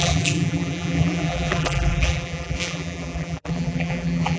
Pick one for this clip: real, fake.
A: fake